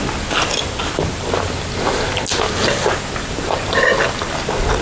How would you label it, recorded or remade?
recorded